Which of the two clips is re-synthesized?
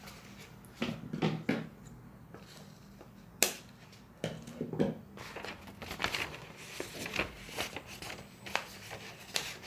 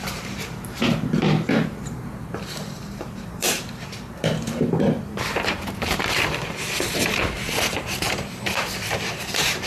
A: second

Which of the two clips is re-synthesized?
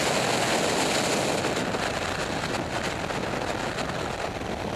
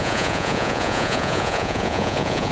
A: second